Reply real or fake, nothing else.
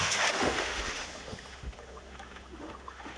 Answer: fake